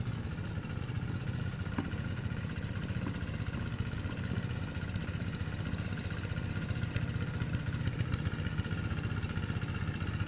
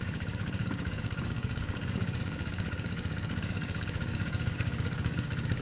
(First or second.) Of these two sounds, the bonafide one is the first